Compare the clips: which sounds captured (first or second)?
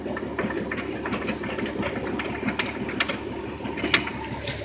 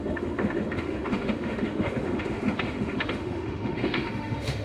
first